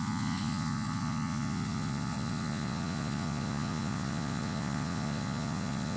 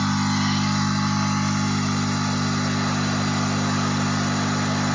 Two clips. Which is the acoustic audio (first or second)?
second